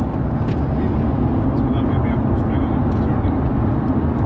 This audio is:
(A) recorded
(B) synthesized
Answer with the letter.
A